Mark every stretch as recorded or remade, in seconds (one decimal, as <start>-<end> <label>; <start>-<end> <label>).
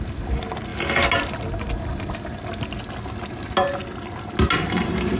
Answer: 0.0-5.2 recorded